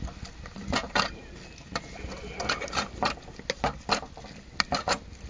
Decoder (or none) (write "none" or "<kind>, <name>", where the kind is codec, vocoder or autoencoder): none